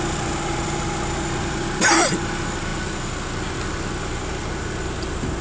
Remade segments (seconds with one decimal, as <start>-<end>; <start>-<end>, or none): none